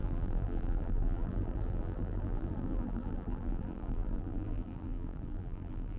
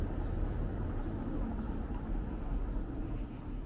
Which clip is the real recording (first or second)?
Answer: second